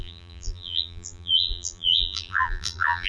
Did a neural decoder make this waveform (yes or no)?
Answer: yes